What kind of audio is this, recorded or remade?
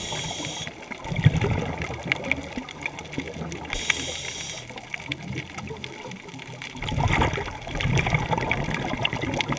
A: recorded